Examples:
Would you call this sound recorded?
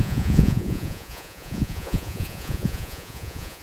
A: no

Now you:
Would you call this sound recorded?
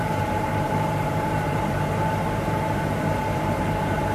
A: no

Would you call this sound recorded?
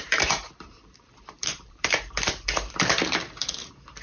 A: no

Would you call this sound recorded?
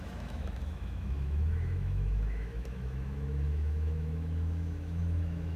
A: no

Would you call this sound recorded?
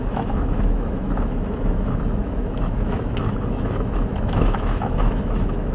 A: no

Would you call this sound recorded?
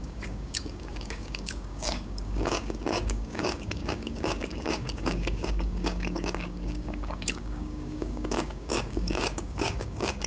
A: no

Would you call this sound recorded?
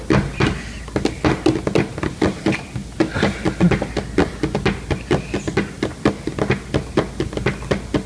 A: yes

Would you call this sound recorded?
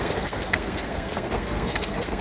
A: no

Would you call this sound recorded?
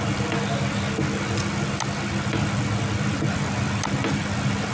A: yes